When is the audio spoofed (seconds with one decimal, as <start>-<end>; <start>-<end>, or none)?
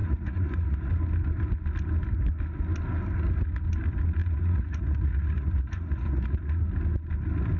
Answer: 0.0-0.9; 4.2-6.6